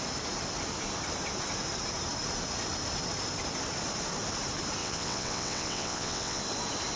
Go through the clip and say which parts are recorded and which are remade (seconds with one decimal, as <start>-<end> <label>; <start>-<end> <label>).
0.0-4.8 recorded; 4.8-6.4 remade; 6.4-7.0 recorded

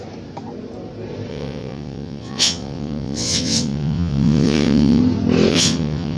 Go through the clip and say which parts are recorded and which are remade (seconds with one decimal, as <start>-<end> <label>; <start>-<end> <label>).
0.0-1.3 recorded; 1.3-5.0 remade; 5.0-5.5 recorded; 5.5-6.2 remade